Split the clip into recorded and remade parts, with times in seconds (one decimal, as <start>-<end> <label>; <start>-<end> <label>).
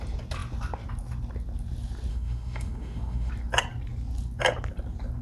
0.0-2.1 recorded; 2.1-3.3 remade; 3.3-5.2 recorded